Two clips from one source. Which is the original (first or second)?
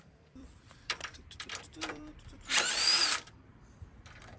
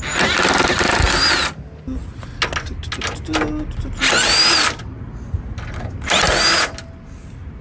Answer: second